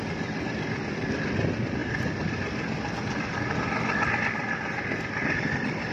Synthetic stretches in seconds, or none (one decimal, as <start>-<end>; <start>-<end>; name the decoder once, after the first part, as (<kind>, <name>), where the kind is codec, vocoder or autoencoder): none